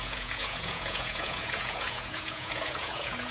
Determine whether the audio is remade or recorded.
remade